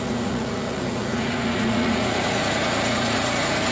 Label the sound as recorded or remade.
remade